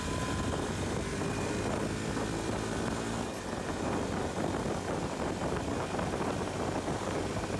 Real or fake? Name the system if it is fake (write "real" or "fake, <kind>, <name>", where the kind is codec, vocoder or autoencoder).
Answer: real